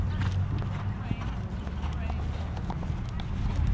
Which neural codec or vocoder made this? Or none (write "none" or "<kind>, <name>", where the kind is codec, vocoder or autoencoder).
none